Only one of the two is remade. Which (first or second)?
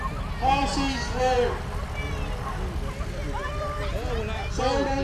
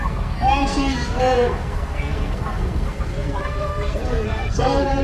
second